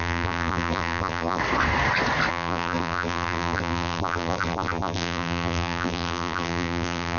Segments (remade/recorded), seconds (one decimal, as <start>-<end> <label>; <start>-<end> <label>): 0.0-1.4 remade; 1.4-2.3 recorded; 2.3-7.2 remade